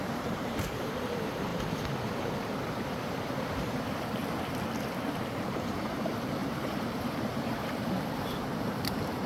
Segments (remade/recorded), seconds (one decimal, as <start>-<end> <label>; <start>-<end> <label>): 0.0-1.5 remade; 1.5-2.6 recorded; 2.6-4.2 remade; 4.2-4.9 recorded; 4.9-9.3 remade